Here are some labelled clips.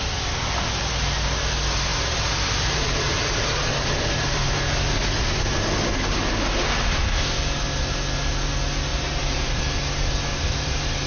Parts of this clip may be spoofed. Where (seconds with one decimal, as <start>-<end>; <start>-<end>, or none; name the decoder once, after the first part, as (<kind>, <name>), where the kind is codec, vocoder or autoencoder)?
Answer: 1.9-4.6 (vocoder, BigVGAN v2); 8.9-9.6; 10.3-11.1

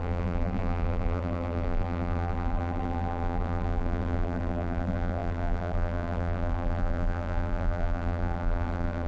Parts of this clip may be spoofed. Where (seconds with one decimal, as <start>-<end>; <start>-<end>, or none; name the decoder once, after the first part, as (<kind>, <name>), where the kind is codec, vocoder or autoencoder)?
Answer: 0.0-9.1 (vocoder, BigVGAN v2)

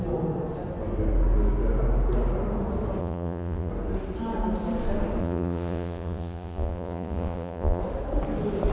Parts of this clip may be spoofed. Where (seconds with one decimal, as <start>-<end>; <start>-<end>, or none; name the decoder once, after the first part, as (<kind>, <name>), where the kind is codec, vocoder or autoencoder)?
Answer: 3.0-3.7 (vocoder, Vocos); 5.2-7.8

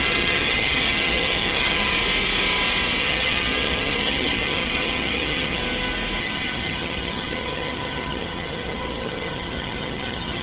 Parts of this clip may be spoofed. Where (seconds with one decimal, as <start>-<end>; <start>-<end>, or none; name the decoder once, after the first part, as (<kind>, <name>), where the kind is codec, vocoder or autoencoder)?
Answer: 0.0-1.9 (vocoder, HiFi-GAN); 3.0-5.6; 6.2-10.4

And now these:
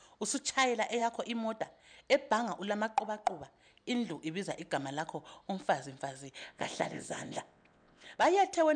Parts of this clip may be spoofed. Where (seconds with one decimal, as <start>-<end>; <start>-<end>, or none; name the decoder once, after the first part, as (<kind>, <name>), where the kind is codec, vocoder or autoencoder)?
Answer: 6.4-8.2 (vocoder, WaveNeXt)

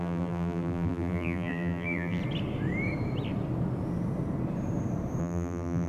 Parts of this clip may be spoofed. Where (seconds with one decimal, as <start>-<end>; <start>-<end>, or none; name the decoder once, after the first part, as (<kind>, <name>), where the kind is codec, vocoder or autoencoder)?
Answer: 0.0-2.2 (vocoder, BigVGAN v2); 5.2-5.9

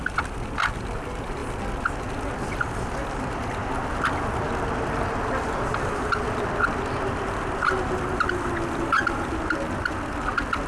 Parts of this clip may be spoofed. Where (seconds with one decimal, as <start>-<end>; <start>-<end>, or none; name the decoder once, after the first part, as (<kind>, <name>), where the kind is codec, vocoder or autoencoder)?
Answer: none